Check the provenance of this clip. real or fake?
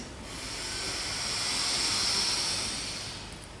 real